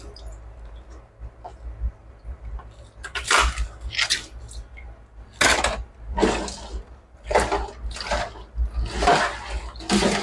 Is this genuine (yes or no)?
yes